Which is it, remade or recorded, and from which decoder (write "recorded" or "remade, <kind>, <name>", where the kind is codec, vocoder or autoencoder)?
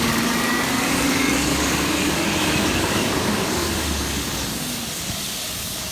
remade, codec, DAC